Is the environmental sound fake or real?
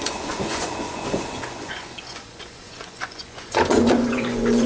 fake